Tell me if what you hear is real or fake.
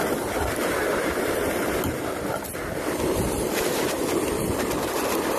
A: real